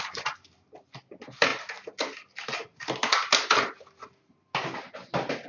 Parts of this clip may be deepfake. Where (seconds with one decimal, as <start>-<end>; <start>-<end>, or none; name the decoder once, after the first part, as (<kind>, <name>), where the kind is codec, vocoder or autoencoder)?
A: none